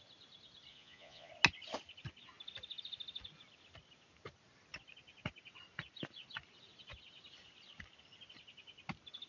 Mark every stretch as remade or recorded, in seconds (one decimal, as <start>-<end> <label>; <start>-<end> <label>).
0.0-0.7 recorded; 0.7-1.3 remade; 1.3-9.3 recorded